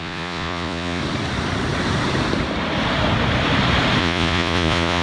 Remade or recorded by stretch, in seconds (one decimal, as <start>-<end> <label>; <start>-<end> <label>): 0.0-1.0 remade; 1.0-4.0 recorded; 4.0-5.0 remade